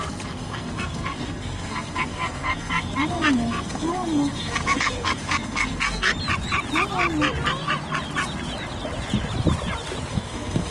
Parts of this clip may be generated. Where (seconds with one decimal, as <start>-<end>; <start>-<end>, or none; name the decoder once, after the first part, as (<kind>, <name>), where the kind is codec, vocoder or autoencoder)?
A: 0.0-6.1 (codec, SNAC); 10.1-10.7